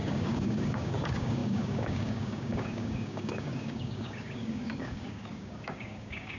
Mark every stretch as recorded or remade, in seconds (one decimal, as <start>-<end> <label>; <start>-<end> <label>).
0.0-6.4 remade

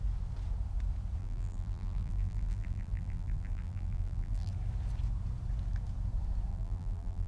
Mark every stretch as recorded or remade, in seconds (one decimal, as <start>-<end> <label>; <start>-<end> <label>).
0.0-1.2 recorded; 1.2-4.5 remade; 4.5-6.5 recorded; 6.5-7.3 remade